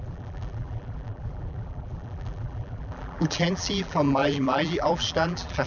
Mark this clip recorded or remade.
remade